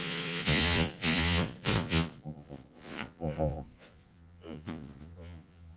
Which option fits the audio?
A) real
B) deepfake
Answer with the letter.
B